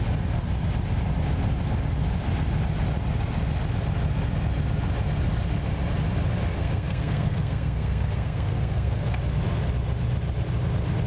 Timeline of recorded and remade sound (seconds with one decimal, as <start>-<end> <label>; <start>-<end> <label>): 0.0-6.6 recorded; 6.6-9.2 remade; 9.2-11.1 recorded